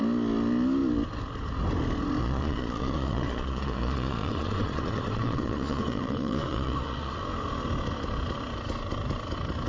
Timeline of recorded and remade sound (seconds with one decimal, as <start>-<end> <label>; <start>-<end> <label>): 0.0-2.2 recorded; 2.2-7.2 remade; 7.2-9.7 recorded